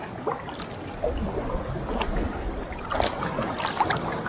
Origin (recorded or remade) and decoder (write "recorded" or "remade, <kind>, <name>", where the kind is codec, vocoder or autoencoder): recorded